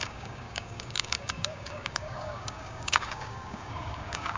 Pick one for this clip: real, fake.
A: fake